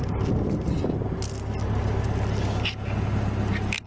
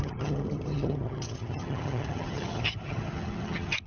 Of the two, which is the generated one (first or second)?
second